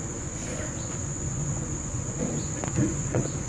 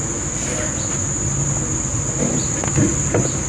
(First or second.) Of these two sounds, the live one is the second